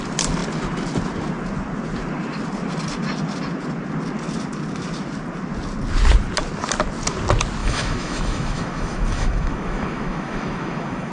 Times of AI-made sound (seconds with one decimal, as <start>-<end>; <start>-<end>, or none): 7.6-11.1